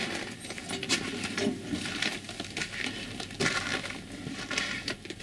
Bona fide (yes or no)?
yes